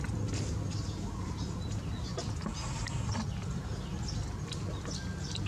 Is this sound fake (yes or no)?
no